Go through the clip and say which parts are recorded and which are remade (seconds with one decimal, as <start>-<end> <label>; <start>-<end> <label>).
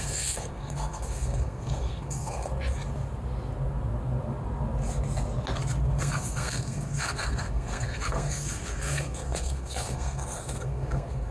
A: 0.0-2.5 remade; 2.5-6.0 recorded; 6.0-11.3 remade